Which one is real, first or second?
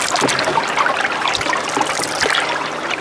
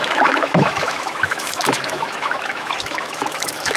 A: first